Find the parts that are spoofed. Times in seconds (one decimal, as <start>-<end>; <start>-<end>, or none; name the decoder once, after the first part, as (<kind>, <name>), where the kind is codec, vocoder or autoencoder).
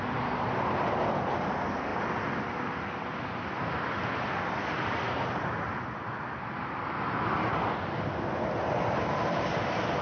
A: none